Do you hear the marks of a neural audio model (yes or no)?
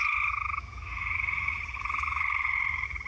yes